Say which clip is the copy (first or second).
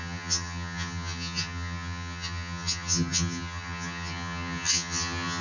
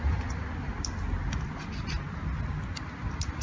first